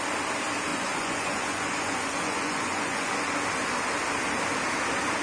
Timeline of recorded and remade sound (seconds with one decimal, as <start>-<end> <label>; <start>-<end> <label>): 0.0-0.7 recorded; 0.7-3.1 remade; 3.1-5.2 recorded